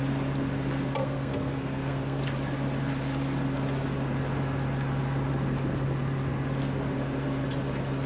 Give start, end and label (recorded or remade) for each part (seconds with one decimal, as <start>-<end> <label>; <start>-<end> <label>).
0.0-1.0 recorded; 1.0-2.2 remade; 2.2-8.1 recorded